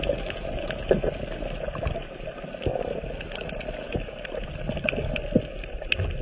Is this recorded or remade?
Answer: recorded